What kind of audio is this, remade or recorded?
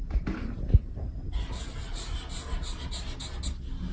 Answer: recorded